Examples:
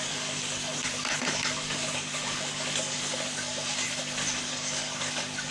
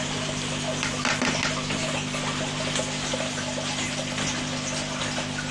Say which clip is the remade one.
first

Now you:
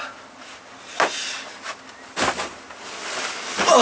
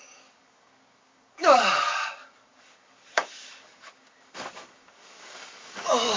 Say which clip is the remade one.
second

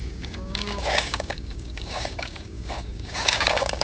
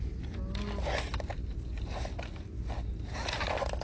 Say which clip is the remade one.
first